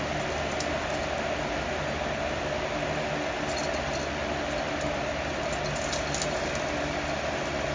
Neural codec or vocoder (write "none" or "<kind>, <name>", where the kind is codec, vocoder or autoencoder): none